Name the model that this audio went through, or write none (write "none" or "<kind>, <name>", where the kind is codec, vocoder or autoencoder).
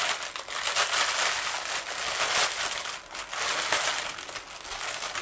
none